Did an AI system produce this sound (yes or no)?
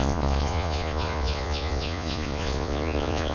yes